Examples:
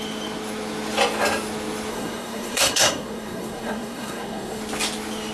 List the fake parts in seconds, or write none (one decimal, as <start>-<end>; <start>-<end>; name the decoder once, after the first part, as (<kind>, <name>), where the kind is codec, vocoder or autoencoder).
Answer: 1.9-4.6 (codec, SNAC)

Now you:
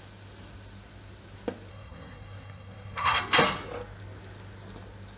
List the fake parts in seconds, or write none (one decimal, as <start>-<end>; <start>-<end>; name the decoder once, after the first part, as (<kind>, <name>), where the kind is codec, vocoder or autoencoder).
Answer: 1.7-3.2 (codec, SNAC)

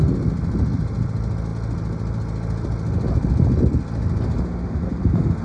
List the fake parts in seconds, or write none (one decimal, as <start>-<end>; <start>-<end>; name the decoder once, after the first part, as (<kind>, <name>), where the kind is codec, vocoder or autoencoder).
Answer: none